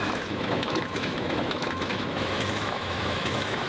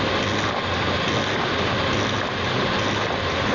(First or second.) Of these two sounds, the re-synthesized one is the first